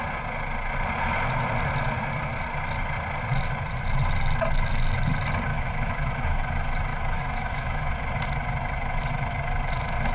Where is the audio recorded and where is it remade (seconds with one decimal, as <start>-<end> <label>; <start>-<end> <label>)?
0.0-5.5 recorded; 5.5-6.4 remade; 6.4-6.9 recorded; 6.9-7.9 remade; 7.9-10.1 recorded